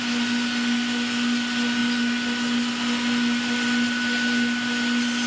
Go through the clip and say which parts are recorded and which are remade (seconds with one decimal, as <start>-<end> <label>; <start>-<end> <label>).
0.0-5.3 recorded